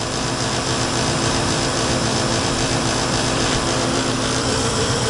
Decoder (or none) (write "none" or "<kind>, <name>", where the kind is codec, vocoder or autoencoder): vocoder, BigVGAN v2